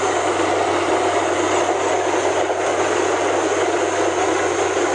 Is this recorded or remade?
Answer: recorded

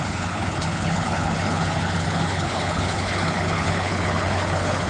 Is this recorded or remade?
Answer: remade